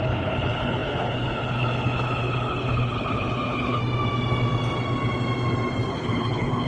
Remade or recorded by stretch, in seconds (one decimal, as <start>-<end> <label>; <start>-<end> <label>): 0.0-3.8 remade; 3.8-5.9 recorded; 5.9-6.7 remade